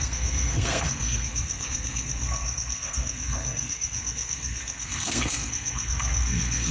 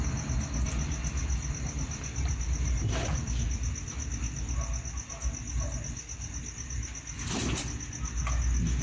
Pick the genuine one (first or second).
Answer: second